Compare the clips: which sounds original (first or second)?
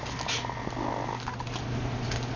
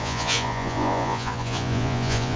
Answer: first